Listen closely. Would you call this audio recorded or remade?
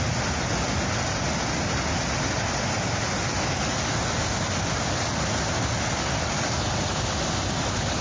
recorded